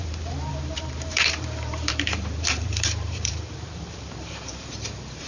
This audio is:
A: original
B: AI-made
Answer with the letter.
B